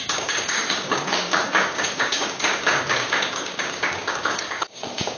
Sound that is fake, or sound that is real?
fake